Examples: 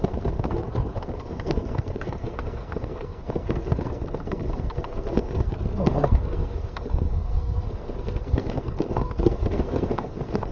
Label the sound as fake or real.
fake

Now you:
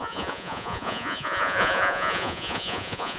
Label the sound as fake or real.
fake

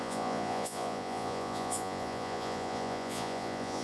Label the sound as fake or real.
fake